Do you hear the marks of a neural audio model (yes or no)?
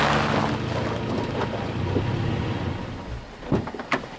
no